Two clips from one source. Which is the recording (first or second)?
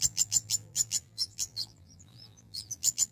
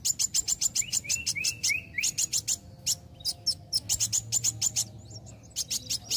second